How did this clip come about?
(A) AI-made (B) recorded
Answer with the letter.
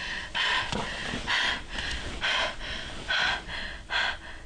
B